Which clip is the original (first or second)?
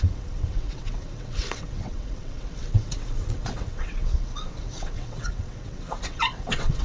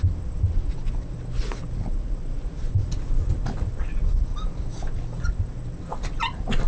second